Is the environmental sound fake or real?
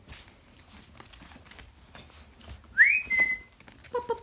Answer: real